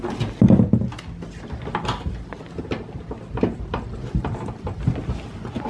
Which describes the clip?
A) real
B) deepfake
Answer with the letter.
A